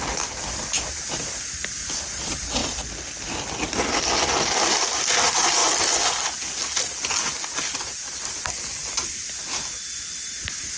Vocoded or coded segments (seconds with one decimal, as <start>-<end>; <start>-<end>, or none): none